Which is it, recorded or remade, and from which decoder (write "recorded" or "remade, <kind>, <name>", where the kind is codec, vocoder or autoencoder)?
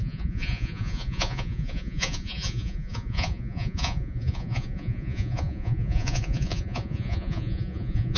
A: remade, vocoder, Vocos